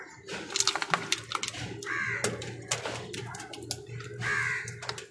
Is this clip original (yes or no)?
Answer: yes